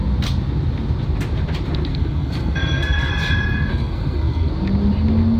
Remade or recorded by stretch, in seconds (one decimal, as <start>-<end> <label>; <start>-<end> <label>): 0.0-1.9 recorded; 1.9-3.1 remade; 3.1-3.7 recorded; 3.7-4.5 remade; 4.5-5.4 recorded